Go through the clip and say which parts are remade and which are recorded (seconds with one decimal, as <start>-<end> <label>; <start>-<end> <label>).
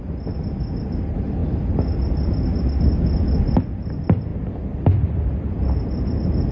0.0-6.5 recorded